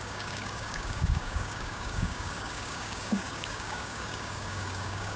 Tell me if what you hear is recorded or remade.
remade